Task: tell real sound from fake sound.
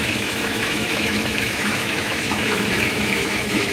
fake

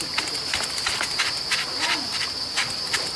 real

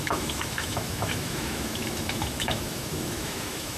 fake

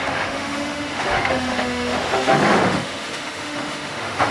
fake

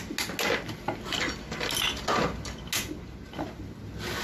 real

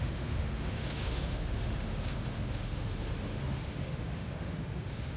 fake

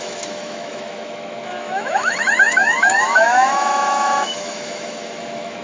fake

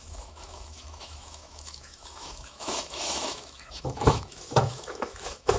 fake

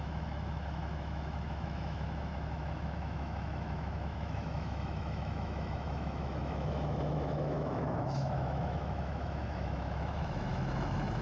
fake